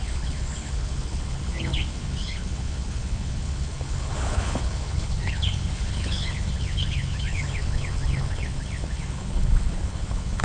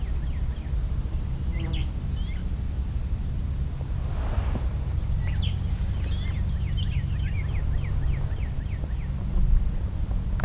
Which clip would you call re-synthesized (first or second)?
first